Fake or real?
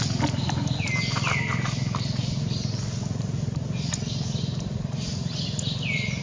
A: real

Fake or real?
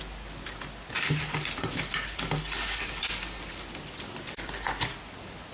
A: real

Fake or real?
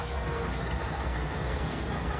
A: fake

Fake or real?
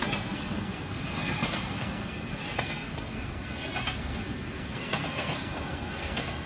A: fake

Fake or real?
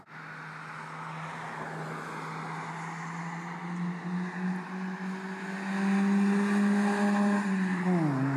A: real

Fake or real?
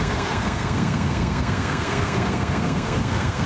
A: fake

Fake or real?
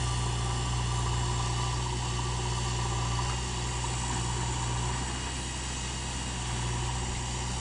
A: real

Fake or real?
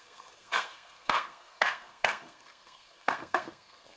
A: fake